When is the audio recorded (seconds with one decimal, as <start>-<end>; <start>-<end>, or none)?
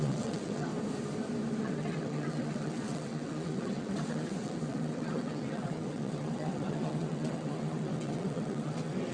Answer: 0.7-1.6